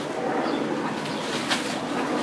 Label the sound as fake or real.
real